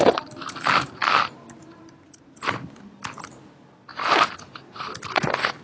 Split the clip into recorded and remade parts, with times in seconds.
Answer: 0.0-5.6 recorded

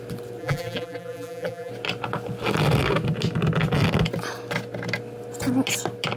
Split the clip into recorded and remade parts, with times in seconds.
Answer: 0.0-0.4 recorded; 0.4-1.7 remade; 1.7-6.2 recorded